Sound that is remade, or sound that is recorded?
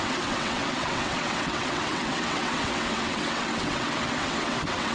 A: remade